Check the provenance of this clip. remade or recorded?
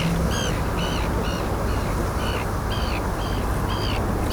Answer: recorded